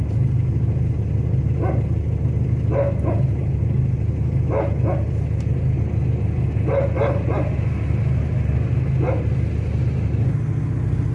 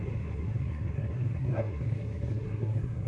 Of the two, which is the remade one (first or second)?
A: second